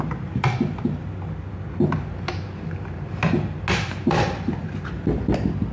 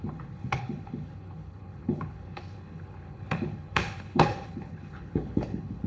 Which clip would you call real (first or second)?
first